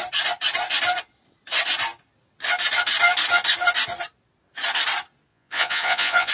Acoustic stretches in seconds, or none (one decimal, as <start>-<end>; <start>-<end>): 0.0-5.3